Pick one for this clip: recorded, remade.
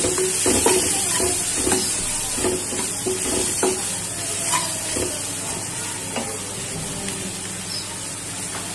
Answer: recorded